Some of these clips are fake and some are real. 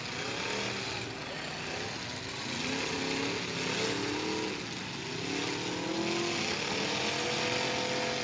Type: real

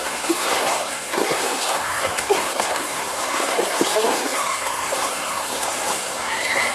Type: fake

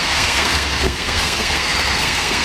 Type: fake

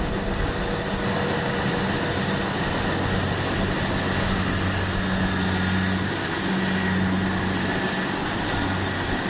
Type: real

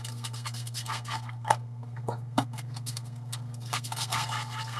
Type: fake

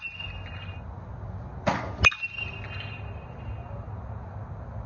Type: real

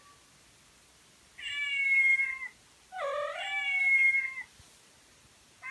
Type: real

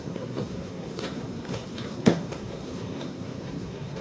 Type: fake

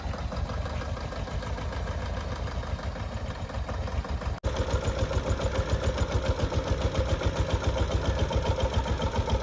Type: real